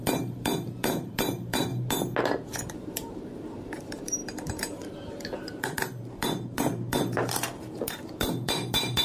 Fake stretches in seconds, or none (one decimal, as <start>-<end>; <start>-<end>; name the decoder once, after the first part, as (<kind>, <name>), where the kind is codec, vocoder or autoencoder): 0.0-1.7 (vocoder, BigVGAN v2); 2.6-9.0